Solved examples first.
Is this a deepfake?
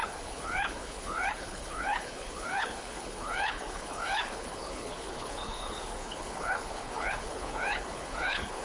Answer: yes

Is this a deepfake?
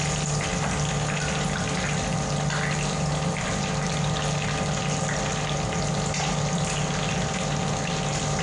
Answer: no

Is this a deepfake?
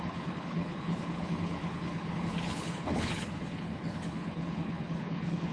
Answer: yes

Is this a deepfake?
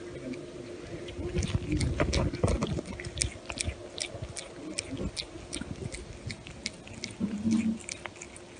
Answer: no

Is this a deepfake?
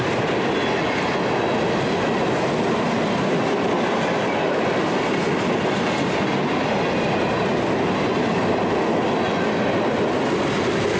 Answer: no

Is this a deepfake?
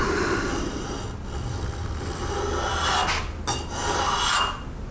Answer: no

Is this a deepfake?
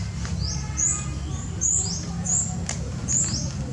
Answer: no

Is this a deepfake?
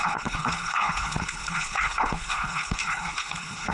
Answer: yes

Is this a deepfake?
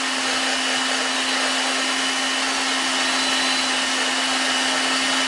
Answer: no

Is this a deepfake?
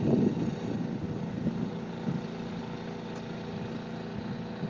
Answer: no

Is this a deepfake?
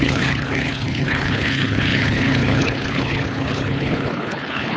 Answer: yes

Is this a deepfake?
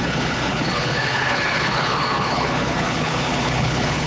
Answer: yes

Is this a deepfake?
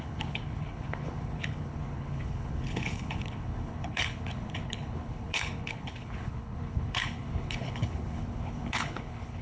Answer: yes